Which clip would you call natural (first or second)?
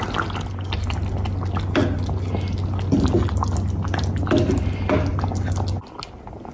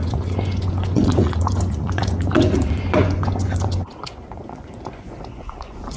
first